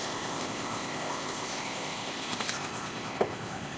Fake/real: fake